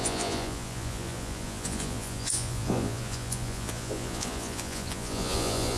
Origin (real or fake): fake